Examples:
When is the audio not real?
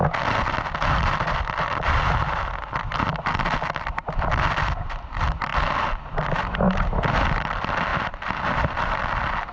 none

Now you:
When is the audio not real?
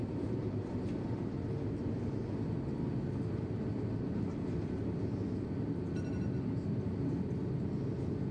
0.0-0.7 (vocoder, BigVGAN v2)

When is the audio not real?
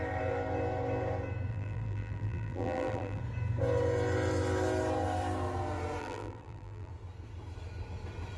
1.5-3.2 (vocoder, BigVGAN v2); 6.0-6.9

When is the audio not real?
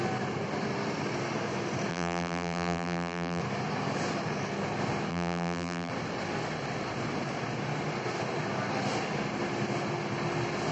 1.9-3.4 (vocoder, BigVGAN v2); 5.1-5.9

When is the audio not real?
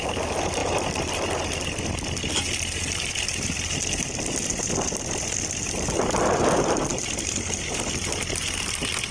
none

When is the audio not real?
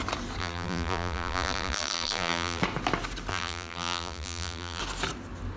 0.4-2.6 (vocoder, BigVGAN v2); 3.3-4.8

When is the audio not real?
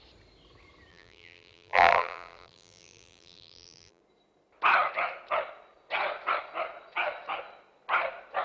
0.9-4.0 (vocoder, BigVGAN v2)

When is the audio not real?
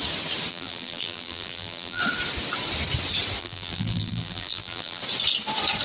0.5-2.0 (vocoder, BigVGAN v2); 3.4-5.0